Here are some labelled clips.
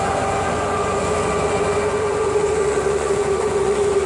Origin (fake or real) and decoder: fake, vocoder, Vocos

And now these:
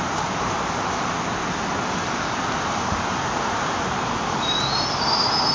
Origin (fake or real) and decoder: real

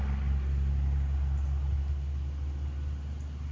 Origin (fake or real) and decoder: real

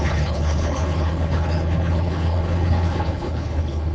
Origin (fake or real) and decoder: fake, codec, HILCodec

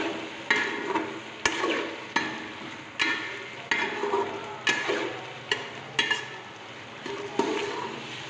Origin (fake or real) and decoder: real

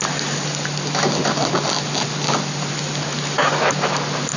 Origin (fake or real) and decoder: real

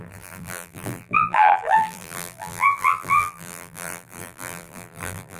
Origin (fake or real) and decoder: fake, vocoder, BigVGAN v2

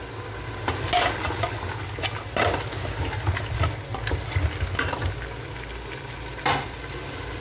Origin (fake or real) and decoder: real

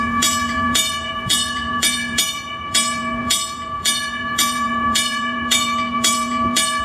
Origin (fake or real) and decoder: fake, vocoder, Vocos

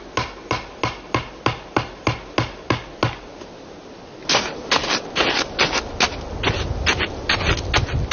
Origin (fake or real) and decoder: real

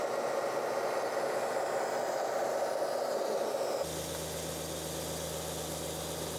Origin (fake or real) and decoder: real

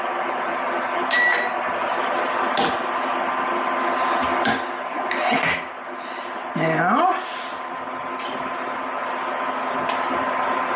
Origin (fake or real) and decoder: real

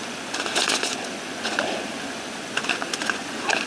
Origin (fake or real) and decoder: fake, vocoder, Vocos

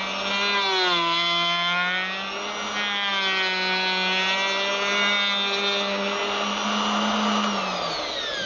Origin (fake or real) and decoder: real